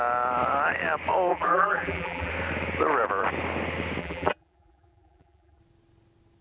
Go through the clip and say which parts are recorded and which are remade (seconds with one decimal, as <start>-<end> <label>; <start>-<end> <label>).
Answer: 0.0-1.3 recorded; 1.3-2.3 remade; 2.3-4.0 recorded; 4.0-5.6 remade; 5.6-6.4 recorded